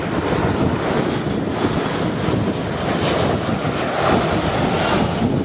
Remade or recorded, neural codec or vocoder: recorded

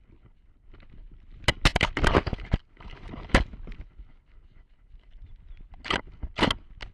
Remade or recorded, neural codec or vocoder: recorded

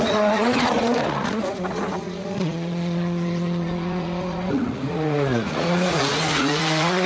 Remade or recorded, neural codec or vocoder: remade, vocoder, Vocos